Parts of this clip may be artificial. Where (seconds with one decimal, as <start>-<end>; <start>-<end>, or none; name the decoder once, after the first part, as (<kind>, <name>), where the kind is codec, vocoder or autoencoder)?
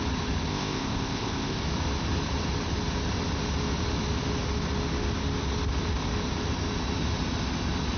0.5-1.6 (codec, ZipCodec)